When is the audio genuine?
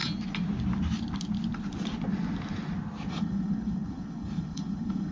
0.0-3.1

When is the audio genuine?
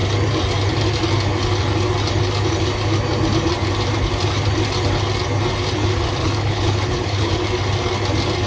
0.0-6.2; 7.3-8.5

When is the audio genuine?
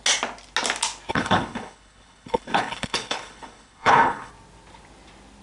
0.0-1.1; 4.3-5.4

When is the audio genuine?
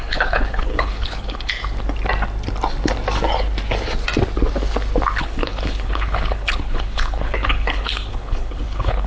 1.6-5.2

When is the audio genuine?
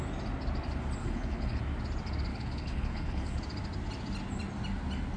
0.0-1.0; 1.6-2.3; 3.4-5.2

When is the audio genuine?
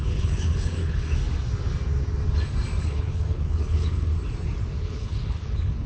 1.2-2.8; 4.1-4.8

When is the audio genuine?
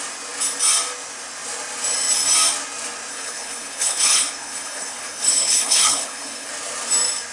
0.0-3.1; 6.5-7.3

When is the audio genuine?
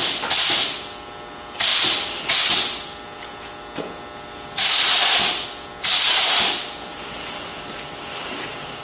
0.0-8.8